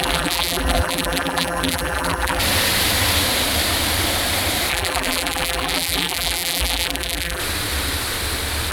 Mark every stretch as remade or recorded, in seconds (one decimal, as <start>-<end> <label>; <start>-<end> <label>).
0.0-2.4 remade; 2.4-4.7 recorded; 4.7-7.4 remade; 7.4-8.7 recorded